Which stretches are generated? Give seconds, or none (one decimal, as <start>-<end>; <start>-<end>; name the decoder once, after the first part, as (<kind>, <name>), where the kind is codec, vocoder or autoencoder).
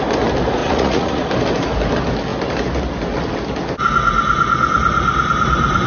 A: 0.6-1.3 (vocoder, Vocos)